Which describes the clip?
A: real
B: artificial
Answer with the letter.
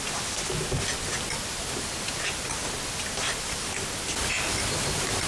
A